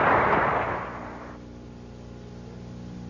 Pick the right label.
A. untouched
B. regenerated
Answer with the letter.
A